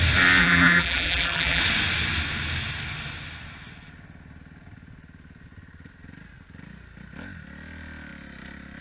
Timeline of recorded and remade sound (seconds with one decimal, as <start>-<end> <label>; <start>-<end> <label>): 0.0-0.4 recorded; 0.4-1.6 remade; 1.6-8.8 recorded